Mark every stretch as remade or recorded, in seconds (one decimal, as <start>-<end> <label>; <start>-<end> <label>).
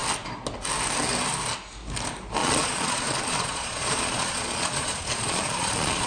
0.0-2.4 recorded; 2.4-6.1 remade